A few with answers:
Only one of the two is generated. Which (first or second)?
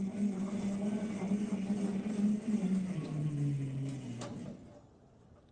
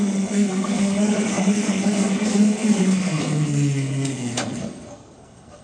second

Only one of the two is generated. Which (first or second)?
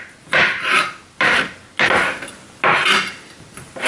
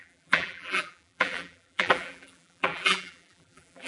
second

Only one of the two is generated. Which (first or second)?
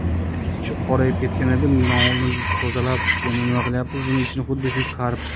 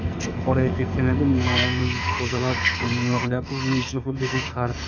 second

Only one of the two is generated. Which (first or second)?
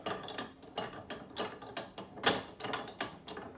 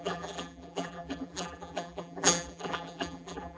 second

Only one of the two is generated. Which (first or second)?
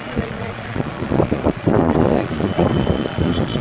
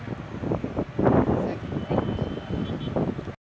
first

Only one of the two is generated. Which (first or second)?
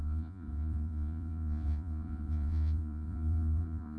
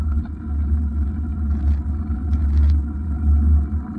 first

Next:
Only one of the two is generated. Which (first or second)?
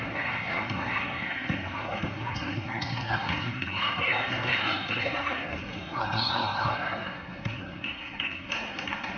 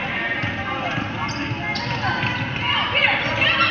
first